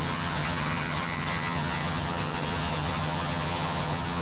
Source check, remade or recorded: remade